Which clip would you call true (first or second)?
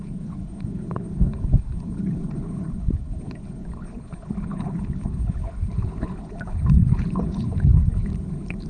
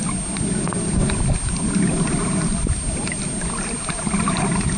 second